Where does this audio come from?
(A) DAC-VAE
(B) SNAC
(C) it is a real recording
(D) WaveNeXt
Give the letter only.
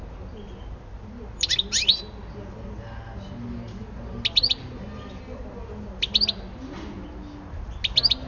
C